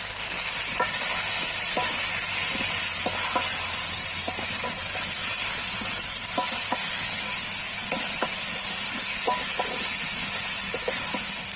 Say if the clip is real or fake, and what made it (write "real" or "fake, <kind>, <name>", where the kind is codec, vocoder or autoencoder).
real